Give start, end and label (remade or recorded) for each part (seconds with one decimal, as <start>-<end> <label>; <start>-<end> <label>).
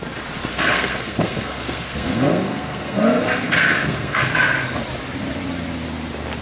0.0-0.5 recorded; 0.5-4.3 remade; 4.3-6.4 recorded